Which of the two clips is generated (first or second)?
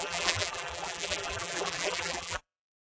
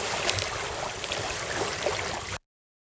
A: first